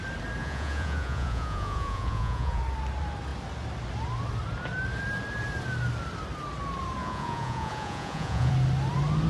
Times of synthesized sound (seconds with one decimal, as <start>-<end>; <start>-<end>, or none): 0.4-2.6; 7.0-8.5